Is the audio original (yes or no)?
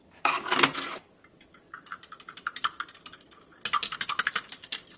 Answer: yes